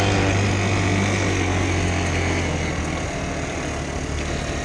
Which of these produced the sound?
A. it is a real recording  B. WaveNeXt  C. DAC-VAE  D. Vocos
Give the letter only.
A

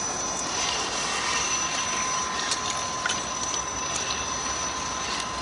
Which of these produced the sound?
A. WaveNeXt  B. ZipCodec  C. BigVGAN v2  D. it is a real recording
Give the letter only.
D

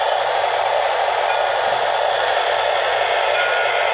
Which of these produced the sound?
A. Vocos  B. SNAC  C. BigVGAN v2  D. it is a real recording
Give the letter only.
D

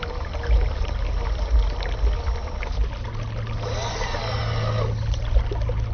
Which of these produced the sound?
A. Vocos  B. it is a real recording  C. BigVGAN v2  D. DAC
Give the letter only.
B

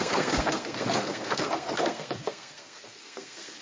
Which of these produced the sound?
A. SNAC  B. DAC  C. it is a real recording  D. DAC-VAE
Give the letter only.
A